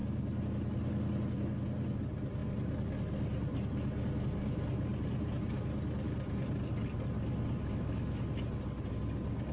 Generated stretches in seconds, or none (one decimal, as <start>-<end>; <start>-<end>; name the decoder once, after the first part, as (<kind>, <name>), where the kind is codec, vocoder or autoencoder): 7.6-8.2 (autoencoder, DAC-VAE)